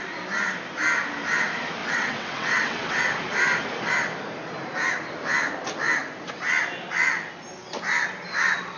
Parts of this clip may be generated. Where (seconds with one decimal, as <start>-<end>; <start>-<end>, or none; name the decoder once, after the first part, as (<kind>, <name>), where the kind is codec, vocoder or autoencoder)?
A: 1.8-3.0 (vocoder, WaveNeXt)